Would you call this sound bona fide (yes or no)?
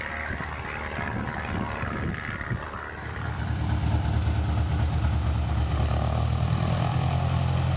yes